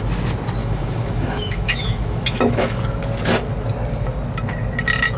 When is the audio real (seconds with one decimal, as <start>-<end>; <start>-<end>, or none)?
0.0-0.6; 2.8-5.2